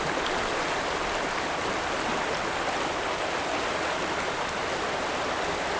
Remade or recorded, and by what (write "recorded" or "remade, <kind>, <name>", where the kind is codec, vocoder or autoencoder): recorded